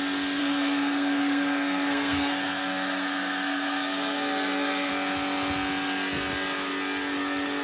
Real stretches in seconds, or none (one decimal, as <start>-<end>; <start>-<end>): 0.0-0.4; 4.9-7.6